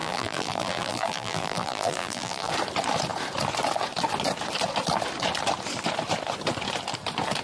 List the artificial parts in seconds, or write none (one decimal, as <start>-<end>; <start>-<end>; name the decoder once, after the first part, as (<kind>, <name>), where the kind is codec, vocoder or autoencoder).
0.0-2.5 (vocoder, BigVGAN v2)